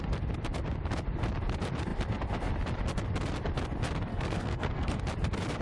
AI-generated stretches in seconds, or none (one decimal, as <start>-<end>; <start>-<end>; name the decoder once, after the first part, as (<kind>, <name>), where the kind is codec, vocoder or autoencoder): 4.1-5.0 (codec, SNAC)